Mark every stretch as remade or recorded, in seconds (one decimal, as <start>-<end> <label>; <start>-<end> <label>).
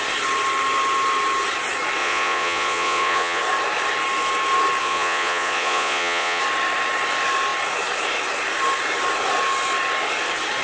0.0-2.0 recorded; 2.0-3.4 remade; 3.4-4.8 recorded; 4.8-6.4 remade; 6.4-10.6 recorded